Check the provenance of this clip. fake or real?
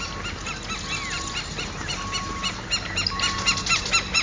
real